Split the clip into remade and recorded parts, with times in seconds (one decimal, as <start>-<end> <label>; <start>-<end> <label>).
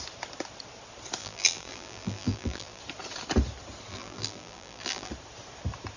0.0-1.2 recorded; 1.2-2.8 remade; 2.8-3.9 recorded; 3.9-5.1 remade; 5.1-6.0 recorded